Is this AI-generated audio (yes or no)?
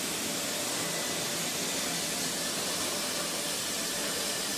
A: no